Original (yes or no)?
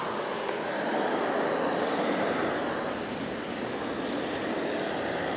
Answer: yes